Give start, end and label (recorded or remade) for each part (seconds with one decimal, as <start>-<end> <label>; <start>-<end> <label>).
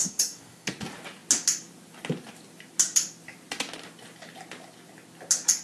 0.0-0.7 remade; 0.7-5.6 recorded